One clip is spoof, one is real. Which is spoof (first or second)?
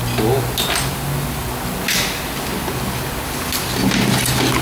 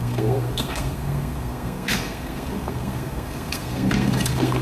second